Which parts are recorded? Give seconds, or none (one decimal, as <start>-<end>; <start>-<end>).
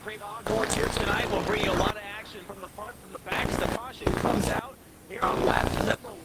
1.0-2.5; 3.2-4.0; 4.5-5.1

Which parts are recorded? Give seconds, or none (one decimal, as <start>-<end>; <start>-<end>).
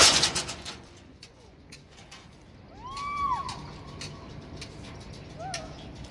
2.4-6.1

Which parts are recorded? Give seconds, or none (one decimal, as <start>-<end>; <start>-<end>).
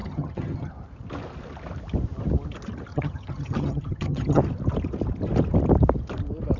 0.7-2.9; 4.4-6.6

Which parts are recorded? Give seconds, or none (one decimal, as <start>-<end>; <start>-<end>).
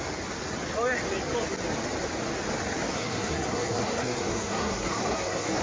0.0-2.9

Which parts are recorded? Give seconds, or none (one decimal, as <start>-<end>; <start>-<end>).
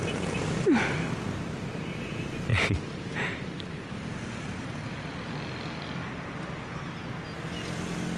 0.0-2.5; 3.8-8.2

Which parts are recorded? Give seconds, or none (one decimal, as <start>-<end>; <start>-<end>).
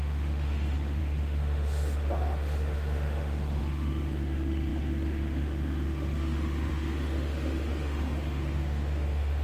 none